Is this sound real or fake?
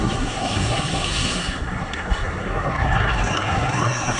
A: fake